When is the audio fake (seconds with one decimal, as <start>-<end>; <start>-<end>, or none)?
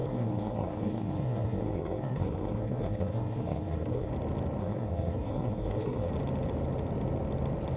0.0-4.1; 4.6-6.1